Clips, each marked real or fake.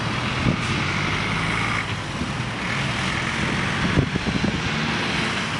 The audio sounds real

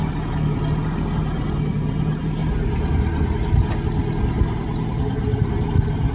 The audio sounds real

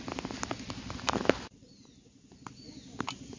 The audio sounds real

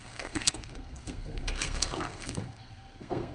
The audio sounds fake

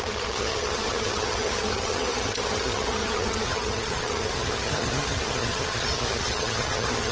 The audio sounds fake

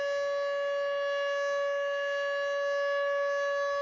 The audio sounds real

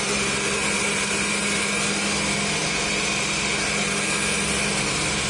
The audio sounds real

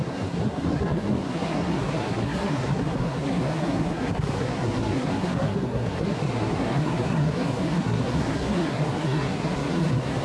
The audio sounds fake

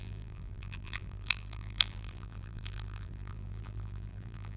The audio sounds fake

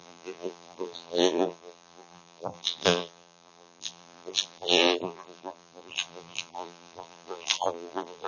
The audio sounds fake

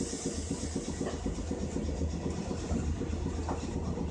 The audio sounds real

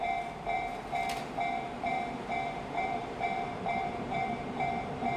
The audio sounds fake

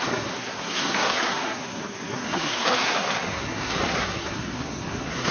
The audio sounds fake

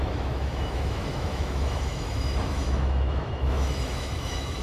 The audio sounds fake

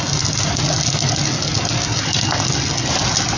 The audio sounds real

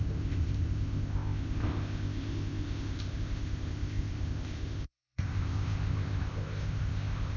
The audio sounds fake